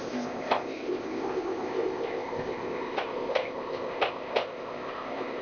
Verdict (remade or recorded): remade